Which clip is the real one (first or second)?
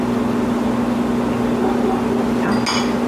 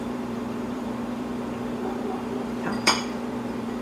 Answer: first